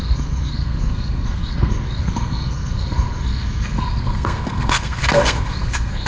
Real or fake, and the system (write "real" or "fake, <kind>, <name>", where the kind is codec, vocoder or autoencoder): fake, codec, SNAC